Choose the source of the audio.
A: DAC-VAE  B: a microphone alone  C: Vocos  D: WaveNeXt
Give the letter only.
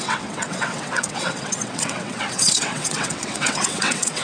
D